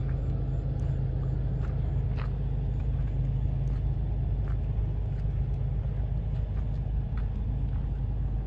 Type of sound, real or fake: real